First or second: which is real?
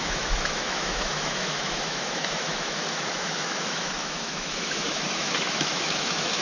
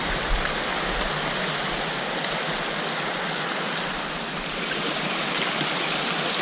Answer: second